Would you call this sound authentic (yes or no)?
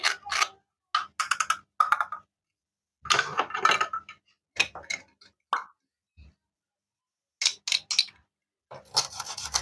yes